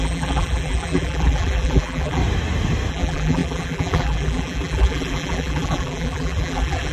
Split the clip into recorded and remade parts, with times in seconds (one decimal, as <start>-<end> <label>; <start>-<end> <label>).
0.0-2.2 remade; 2.2-2.9 recorded; 2.9-6.9 remade